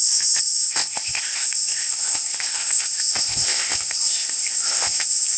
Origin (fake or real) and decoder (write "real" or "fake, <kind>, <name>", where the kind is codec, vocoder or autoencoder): fake, codec, ZipCodec